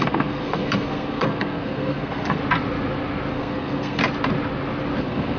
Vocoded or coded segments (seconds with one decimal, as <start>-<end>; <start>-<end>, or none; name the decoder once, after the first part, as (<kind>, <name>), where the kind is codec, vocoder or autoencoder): 0.0-2.4 (codec, SNAC); 3.3-4.0; 5.0-5.4